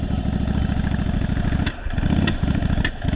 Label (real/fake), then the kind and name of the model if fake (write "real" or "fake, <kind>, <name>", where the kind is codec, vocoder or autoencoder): real